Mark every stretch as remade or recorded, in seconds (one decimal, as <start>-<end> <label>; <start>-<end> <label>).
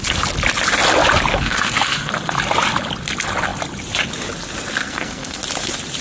0.0-1.3 recorded; 1.3-2.1 remade; 2.1-4.8 recorded; 4.8-5.4 remade; 5.4-6.0 recorded